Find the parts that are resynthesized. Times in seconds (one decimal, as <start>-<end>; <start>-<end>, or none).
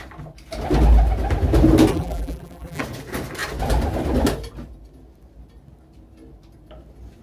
1.9-2.8